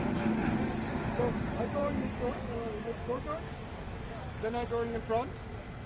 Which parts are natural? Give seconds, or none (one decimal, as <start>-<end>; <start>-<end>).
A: 0.0-1.8; 5.0-5.9

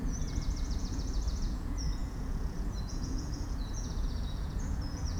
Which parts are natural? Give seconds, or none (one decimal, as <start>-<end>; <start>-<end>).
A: none

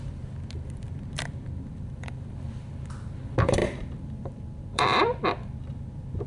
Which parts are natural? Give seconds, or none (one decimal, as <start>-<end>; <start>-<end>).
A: 0.0-1.7; 3.2-3.6; 5.6-6.3

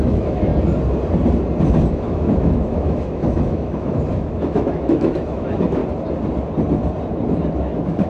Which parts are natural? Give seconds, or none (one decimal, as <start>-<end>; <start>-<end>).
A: 0.5-1.9; 5.8-7.5

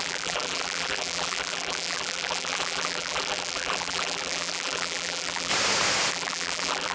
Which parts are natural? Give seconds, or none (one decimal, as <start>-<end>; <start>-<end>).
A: 5.5-6.1

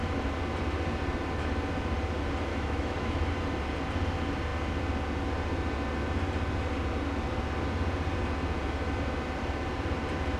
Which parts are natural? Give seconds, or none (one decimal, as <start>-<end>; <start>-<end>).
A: 0.0-2.5; 3.3-10.4

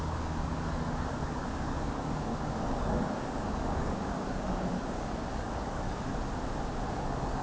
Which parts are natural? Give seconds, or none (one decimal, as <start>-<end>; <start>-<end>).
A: 6.1-6.9